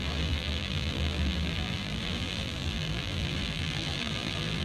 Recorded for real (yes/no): no